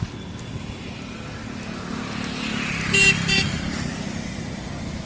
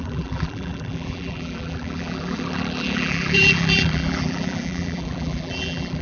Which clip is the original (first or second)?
first